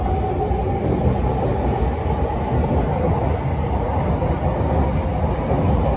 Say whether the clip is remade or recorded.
recorded